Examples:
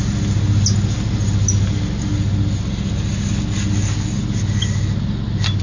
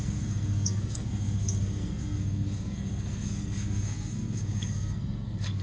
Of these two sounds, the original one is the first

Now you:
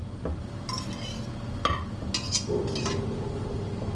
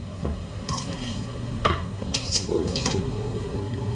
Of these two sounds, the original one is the first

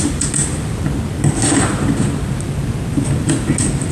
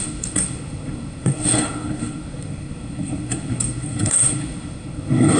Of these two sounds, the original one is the first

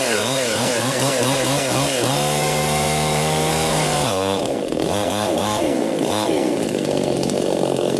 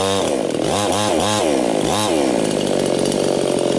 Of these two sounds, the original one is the second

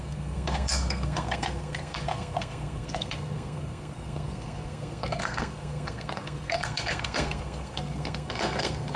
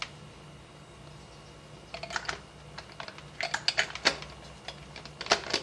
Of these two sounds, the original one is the second